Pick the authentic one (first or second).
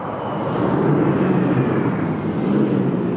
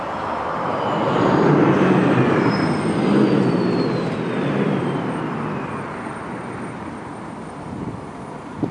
first